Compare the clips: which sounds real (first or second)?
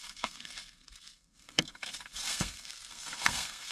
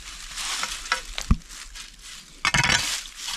second